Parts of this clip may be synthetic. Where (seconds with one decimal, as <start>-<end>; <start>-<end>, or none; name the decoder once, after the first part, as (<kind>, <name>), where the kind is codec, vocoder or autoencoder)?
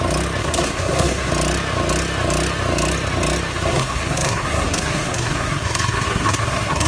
0.4-1.3 (codec, SNAC); 3.5-6.9